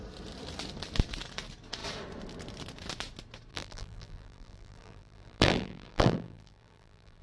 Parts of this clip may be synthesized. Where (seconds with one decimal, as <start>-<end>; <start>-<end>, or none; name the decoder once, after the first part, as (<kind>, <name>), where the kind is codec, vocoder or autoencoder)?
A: 3.5-7.2 (vocoder, BigVGAN v2)